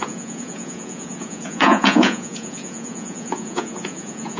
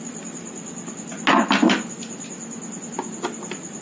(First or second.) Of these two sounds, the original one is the second